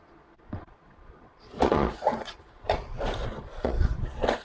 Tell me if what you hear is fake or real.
fake